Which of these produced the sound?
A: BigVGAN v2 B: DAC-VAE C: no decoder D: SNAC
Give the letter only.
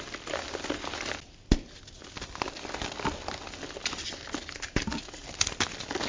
C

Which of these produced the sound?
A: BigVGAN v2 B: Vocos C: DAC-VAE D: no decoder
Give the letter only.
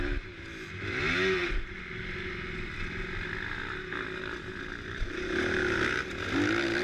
D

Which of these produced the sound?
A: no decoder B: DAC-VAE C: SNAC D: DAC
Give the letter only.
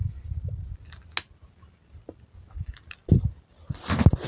A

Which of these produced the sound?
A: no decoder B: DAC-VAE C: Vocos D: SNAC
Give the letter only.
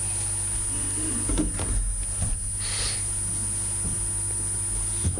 A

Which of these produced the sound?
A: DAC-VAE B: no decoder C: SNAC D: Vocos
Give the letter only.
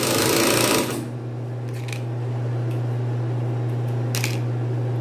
B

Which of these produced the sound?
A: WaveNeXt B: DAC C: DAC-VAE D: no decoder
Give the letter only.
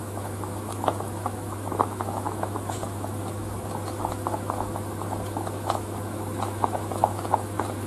C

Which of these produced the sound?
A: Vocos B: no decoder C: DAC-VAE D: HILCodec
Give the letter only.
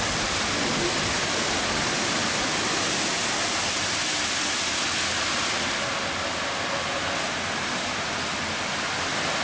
B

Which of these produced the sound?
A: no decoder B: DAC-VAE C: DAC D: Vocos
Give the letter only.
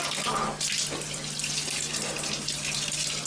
A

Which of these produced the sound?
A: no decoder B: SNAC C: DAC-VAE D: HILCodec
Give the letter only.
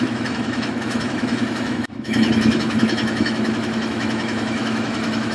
C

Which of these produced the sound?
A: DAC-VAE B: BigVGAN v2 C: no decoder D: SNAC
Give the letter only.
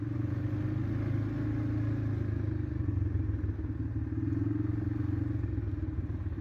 C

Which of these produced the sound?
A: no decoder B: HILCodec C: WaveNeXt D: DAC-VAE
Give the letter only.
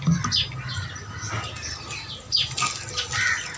A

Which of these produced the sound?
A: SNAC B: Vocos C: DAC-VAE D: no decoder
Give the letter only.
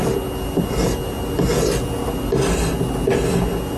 D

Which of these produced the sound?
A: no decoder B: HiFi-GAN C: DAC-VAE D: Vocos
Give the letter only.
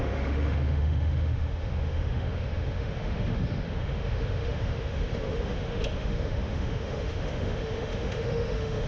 C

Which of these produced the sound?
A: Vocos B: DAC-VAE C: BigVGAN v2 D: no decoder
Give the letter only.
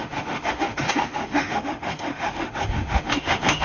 B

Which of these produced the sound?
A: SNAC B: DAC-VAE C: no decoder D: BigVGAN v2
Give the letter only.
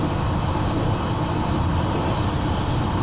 C